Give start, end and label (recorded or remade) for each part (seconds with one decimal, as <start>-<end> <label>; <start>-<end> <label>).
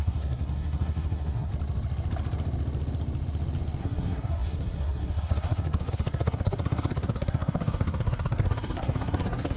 0.0-1.5 remade; 1.5-3.8 recorded; 3.8-9.6 remade